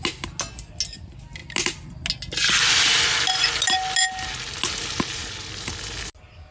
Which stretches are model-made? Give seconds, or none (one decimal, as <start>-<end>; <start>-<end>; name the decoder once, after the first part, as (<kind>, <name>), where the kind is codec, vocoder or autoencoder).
none